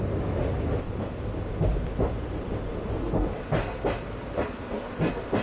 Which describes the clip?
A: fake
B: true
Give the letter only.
B